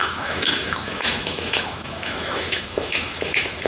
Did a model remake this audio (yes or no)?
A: yes